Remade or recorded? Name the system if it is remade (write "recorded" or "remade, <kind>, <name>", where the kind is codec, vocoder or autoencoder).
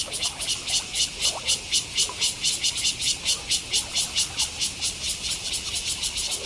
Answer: recorded